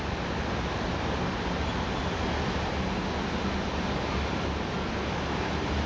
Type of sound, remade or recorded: recorded